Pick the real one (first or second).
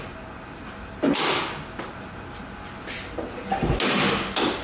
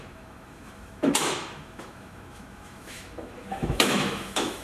first